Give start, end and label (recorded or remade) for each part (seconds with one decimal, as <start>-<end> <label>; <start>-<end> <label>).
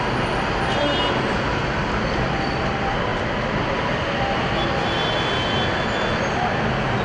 0.0-7.0 recorded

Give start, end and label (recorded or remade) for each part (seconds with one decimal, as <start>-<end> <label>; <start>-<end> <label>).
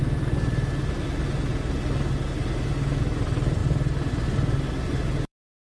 0.0-3.0 recorded; 3.0-5.7 remade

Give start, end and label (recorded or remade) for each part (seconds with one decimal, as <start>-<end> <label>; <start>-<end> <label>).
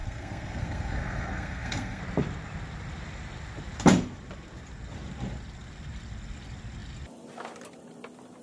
0.0-2.0 remade; 2.0-8.4 recorded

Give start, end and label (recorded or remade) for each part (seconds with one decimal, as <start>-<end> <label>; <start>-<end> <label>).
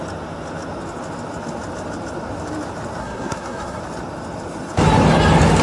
0.0-3.0 recorded; 3.0-3.8 remade; 3.8-5.6 recorded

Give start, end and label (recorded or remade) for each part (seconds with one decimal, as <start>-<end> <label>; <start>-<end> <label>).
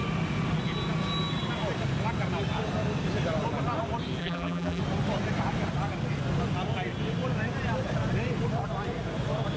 0.0-4.2 recorded; 4.2-4.8 remade; 4.8-9.6 recorded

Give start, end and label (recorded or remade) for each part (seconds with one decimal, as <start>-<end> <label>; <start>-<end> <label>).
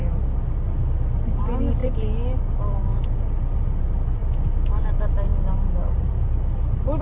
0.0-7.0 recorded